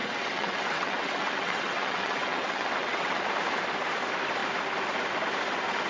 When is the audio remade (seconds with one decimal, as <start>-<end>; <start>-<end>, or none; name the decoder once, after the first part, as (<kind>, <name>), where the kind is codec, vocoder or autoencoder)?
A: 0.0-3.2 (vocoder, WaveNeXt)